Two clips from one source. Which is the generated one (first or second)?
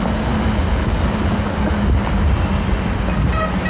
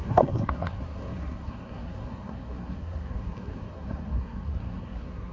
second